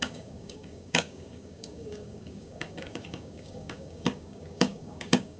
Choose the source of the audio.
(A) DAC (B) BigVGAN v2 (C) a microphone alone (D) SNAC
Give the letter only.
A